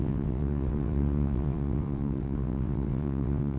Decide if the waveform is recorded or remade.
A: remade